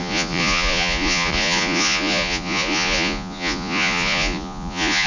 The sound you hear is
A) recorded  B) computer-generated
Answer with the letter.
B